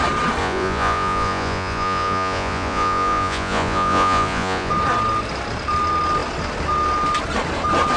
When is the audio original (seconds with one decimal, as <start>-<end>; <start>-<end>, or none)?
0.0-0.4; 4.7-8.0